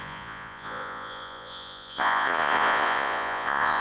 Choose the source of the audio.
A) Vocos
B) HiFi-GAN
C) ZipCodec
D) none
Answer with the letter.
A